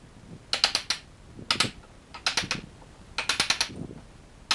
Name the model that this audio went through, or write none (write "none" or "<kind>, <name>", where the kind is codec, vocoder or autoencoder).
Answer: none